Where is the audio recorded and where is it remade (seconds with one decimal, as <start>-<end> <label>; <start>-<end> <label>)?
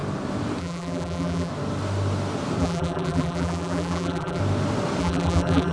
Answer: 0.0-0.6 recorded; 0.6-1.5 remade; 1.5-2.6 recorded; 2.6-4.4 remade; 4.4-5.0 recorded; 5.0-5.7 remade